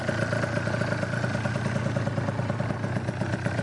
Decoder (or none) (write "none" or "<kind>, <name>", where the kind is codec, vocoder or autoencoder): none